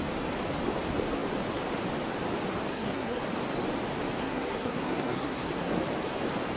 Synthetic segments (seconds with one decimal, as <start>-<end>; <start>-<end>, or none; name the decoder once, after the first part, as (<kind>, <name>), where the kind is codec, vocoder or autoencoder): 2.7-3.2 (codec, SNAC); 4.2-5.7